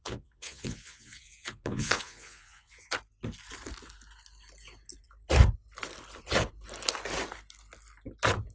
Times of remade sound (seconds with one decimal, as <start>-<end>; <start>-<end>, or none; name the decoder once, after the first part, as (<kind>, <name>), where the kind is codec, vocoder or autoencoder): 0.0-2.9 (vocoder, Vocos)